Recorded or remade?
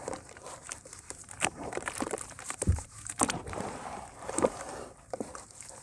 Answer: remade